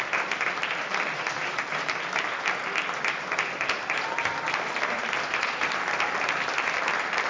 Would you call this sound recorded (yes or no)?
yes